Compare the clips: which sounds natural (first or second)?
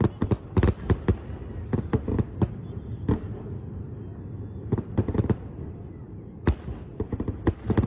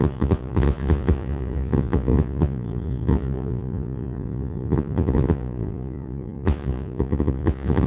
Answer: first